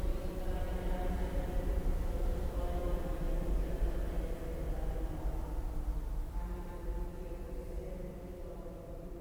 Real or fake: real